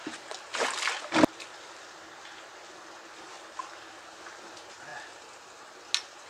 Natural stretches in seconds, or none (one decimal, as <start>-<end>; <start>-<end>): 0.0-6.3

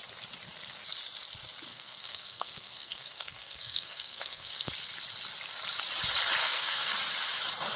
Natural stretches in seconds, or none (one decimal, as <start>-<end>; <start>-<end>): 0.0-1.7; 4.7-6.4; 6.9-7.8